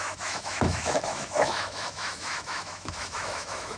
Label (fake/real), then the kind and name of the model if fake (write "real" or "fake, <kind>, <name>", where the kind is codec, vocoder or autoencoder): fake, autoencoder, DAC-VAE